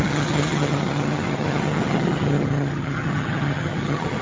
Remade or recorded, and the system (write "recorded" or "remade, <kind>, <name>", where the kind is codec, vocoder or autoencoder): remade, vocoder, HiFi-GAN